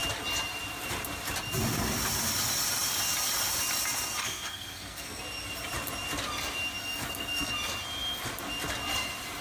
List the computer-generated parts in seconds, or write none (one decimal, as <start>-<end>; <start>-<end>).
4.2-5.2; 6.8-7.5